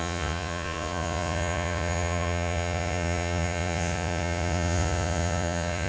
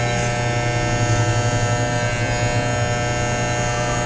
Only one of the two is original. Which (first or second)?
second